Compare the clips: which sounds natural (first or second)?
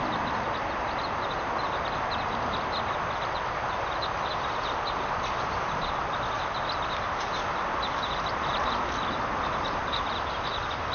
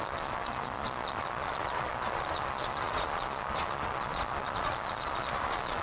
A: first